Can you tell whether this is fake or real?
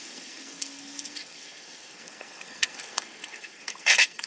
fake